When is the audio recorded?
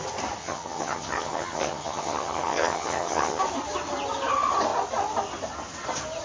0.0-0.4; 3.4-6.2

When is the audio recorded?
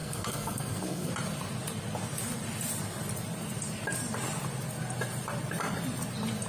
1.1-6.5